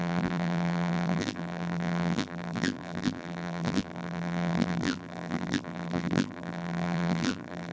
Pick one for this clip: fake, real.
fake